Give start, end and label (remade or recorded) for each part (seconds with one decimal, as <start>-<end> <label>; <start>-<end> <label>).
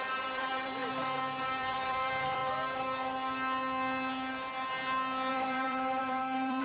0.0-0.8 remade; 0.8-1.4 recorded; 1.4-2.4 remade; 2.4-5.3 recorded; 5.3-6.6 remade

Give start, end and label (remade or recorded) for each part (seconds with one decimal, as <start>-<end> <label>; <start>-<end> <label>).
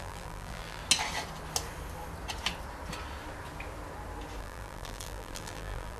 0.0-0.8 remade; 0.8-4.4 recorded; 4.4-6.0 remade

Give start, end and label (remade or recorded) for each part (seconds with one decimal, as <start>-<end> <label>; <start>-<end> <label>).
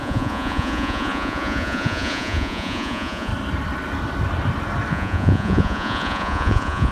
0.0-3.3 remade; 3.3-4.9 recorded; 4.9-6.9 remade